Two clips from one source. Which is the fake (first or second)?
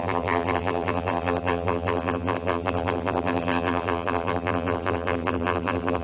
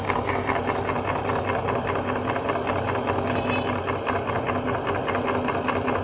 first